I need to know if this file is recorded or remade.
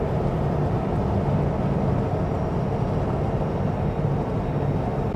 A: recorded